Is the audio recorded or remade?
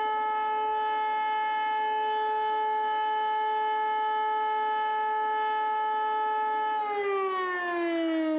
recorded